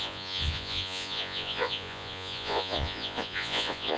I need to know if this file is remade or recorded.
remade